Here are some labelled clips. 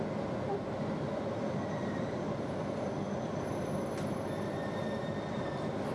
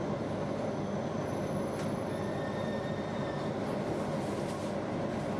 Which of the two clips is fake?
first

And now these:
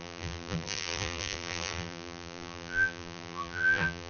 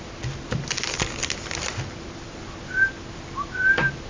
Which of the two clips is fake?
first